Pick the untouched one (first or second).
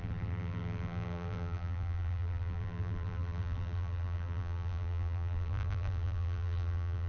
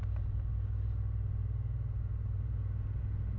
second